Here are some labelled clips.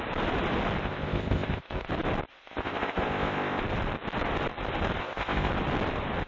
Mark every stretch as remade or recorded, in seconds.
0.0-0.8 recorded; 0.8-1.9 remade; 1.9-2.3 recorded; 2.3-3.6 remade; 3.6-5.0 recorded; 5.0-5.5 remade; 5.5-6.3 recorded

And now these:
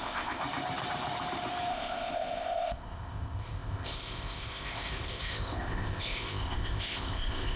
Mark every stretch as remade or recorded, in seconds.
0.0-0.4 remade; 0.4-1.7 recorded; 1.7-7.6 remade

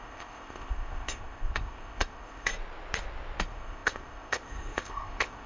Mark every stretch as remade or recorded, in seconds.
0.0-2.5 remade; 2.5-3.4 recorded; 3.4-5.5 remade

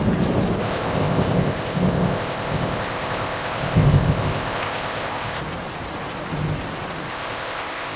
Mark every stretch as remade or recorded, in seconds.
0.0-0.6 recorded; 0.6-5.4 remade; 5.4-7.1 recorded; 7.1-8.0 remade

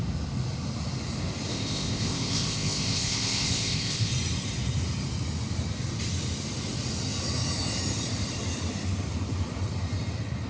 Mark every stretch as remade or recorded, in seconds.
0.0-1.5 recorded; 1.5-4.1 remade; 4.1-10.5 recorded

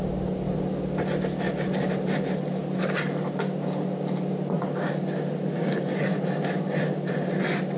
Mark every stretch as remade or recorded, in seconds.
0.0-7.8 recorded

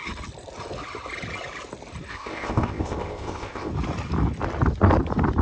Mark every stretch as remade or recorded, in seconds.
0.0-2.1 recorded; 2.1-3.7 remade; 3.7-5.4 recorded